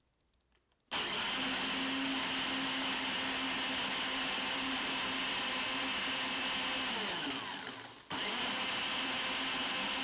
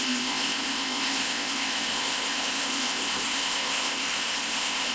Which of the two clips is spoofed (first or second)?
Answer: second